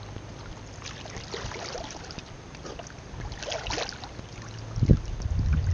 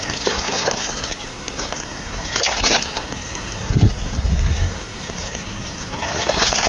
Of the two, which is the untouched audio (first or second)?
first